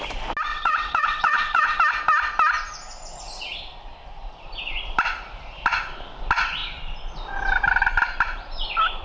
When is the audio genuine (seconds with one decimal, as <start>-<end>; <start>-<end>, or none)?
0.0-0.5; 1.8-9.0